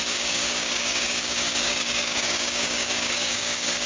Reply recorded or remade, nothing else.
remade